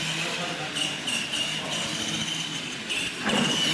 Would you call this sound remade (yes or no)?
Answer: no